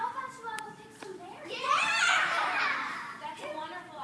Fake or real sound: fake